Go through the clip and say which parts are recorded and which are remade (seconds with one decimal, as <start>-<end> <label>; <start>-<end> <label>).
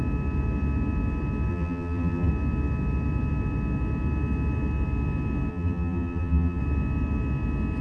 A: 0.0-1.5 recorded; 1.5-2.3 remade; 2.3-5.5 recorded; 5.5-6.6 remade; 6.6-7.8 recorded